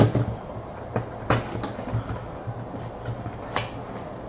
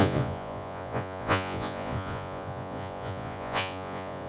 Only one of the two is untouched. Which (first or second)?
first